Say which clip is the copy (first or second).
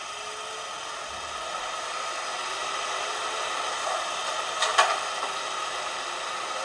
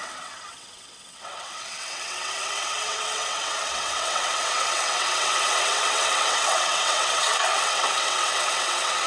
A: second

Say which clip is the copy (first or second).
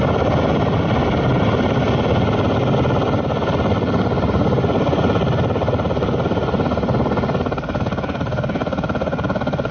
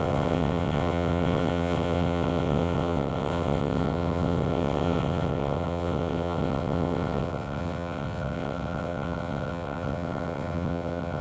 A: second